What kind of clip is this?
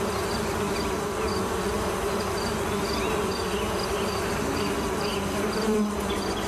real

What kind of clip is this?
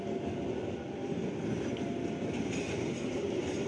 real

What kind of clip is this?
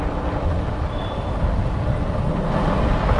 real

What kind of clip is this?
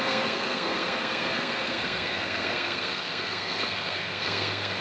fake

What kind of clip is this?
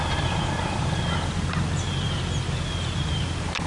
real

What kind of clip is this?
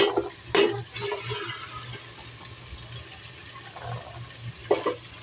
real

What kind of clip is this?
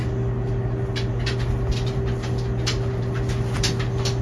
real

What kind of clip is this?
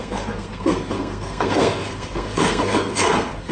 fake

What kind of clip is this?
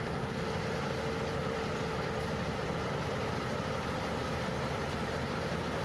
fake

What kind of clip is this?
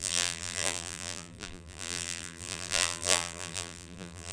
fake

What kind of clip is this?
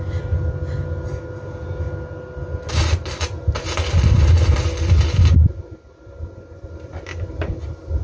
real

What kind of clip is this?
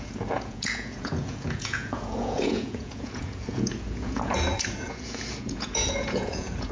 fake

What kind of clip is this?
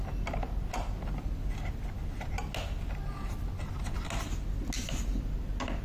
real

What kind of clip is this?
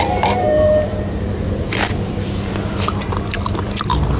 fake